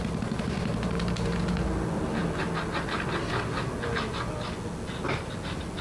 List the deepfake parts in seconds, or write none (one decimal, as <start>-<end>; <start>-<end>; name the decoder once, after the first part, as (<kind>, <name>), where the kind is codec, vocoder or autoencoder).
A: none